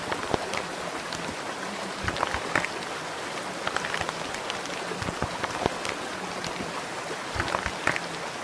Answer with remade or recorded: recorded